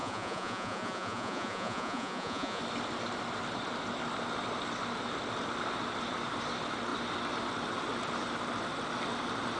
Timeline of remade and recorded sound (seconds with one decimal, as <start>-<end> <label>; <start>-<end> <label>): 0.0-2.6 remade; 2.6-9.6 recorded